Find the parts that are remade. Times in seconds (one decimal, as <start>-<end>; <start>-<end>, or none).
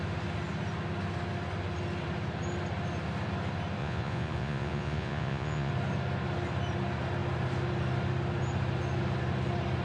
3.8-5.7